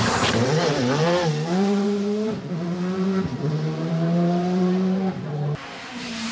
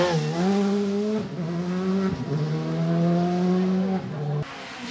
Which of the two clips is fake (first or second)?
first